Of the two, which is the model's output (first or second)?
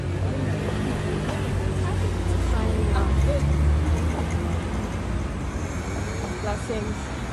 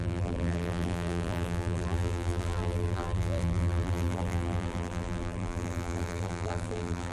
second